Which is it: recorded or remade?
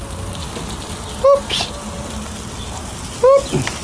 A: recorded